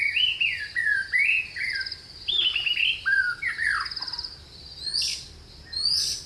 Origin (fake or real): real